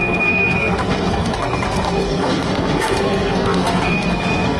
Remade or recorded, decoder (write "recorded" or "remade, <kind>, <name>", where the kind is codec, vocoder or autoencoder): remade, codec, SNAC